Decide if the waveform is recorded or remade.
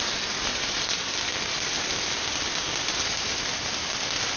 recorded